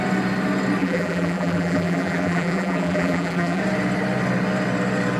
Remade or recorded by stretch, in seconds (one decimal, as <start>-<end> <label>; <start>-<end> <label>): 0.0-0.8 recorded; 0.8-3.6 remade; 3.6-5.2 recorded